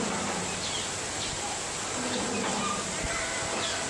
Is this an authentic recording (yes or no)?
yes